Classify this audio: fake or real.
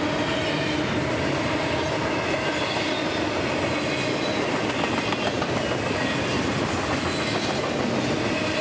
real